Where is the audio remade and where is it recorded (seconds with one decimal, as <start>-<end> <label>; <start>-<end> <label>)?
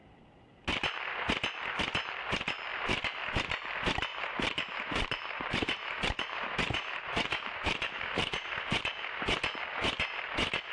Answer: 0.0-4.1 recorded; 4.1-8.8 remade; 8.8-10.7 recorded